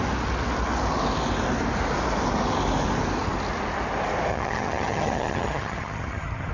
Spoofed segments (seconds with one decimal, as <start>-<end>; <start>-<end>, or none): 4.3-6.5